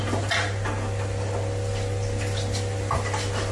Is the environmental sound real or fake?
real